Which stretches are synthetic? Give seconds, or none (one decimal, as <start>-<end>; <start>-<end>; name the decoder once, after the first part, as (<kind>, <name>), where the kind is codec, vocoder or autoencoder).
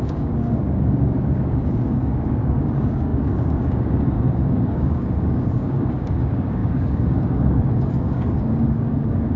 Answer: 0.0-9.4 (codec, DAC)